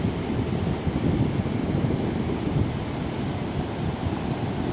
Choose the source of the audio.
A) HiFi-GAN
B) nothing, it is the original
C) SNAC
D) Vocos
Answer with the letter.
B